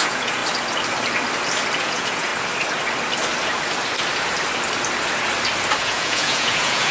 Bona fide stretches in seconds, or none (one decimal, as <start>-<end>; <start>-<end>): 0.4-1.8; 2.3-5.8